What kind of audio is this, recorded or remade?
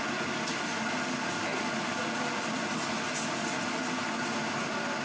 recorded